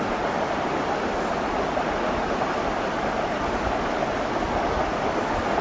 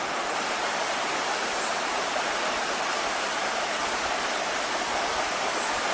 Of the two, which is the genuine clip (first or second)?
first